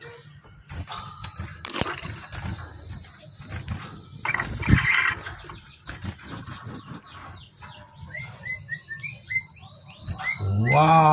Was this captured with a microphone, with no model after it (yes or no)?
yes